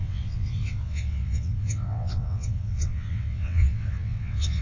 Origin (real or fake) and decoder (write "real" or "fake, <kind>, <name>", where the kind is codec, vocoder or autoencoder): fake, vocoder, WaveNeXt